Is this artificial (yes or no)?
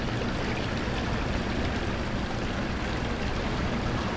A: no